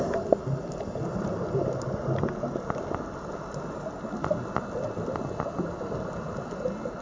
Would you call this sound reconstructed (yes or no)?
no